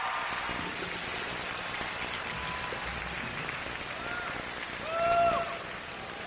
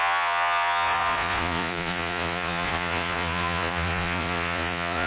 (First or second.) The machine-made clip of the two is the second